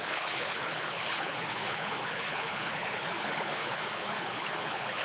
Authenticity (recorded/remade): remade